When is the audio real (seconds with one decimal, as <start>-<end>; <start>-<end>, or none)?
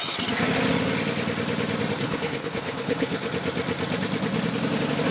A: 0.0-2.0; 3.3-5.1